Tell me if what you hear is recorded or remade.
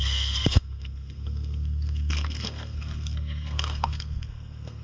remade